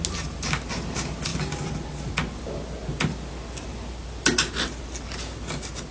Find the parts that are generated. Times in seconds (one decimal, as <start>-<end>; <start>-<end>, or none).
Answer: none